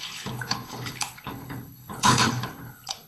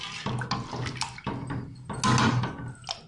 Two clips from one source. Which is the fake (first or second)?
first